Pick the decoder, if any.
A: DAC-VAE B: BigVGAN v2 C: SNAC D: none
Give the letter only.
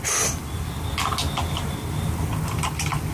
D